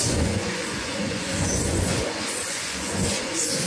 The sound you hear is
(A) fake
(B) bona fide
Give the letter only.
A